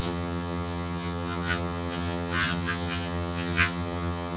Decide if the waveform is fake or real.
fake